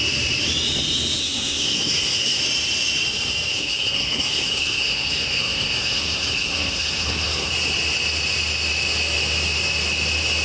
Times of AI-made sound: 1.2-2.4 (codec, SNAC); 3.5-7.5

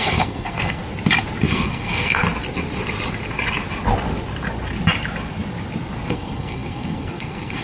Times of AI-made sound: 0.0-0.8 (codec, SNAC); 1.4-2.2; 6.1-7.6

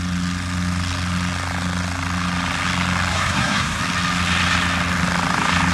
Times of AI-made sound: 3.1-3.8 (codec, SNAC)